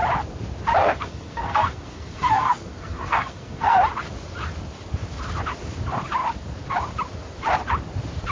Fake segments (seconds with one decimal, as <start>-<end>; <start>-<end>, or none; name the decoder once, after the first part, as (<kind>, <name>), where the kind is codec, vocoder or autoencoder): 0.8-3.8 (codec, SNAC)